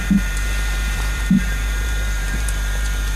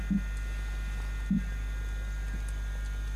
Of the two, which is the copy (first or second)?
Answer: first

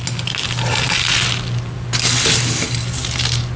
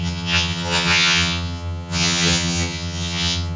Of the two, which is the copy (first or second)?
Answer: second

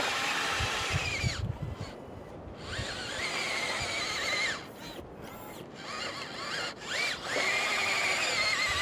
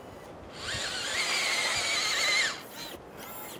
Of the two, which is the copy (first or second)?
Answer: first